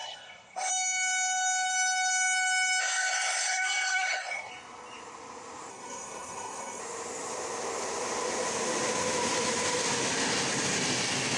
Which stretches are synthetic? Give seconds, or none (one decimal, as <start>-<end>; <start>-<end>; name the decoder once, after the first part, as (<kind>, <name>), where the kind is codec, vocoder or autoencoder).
0.0-0.7 (codec, SNAC); 2.8-4.5; 5.7-6.8